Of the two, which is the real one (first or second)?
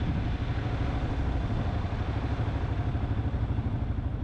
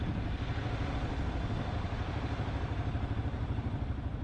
first